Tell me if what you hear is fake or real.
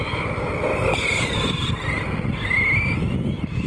real